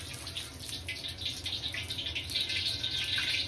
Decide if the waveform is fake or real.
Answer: real